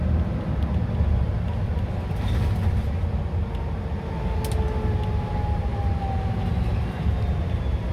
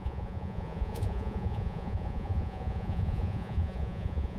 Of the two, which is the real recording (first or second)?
first